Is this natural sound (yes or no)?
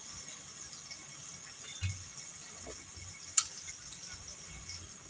yes